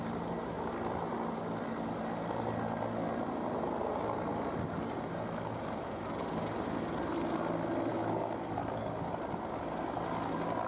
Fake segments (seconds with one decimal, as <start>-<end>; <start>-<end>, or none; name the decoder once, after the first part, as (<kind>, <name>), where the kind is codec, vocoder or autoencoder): 7.9-9.1 (codec, DAC)